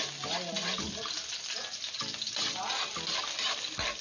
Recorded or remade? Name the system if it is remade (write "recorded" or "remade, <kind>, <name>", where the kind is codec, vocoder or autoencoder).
recorded